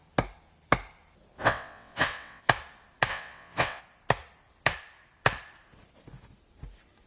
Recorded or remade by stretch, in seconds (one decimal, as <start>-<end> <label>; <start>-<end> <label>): 0.0-1.4 recorded; 1.4-2.4 remade; 2.4-3.1 recorded; 3.1-3.8 remade; 3.8-7.1 recorded